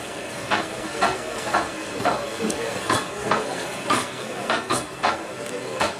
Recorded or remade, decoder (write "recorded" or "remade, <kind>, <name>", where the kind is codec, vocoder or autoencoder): remade, codec, SNAC